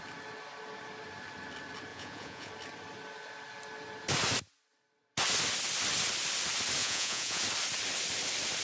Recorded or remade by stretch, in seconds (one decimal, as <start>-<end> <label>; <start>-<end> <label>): 0.0-1.9 recorded; 1.9-2.5 remade; 2.5-6.8 recorded; 6.8-7.4 remade; 7.4-8.6 recorded